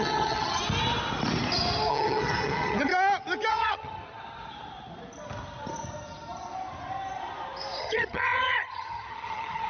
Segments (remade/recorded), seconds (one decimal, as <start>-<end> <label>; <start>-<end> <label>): 0.0-0.6 remade; 0.6-1.9 recorded; 1.9-2.9 remade; 2.9-3.5 recorded; 3.5-4.0 remade; 4.0-7.8 recorded; 7.8-9.7 remade